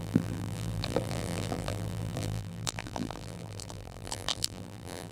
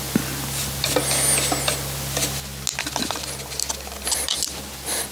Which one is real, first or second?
second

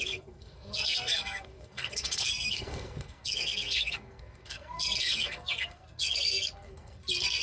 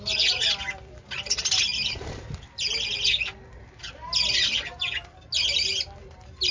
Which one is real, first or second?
second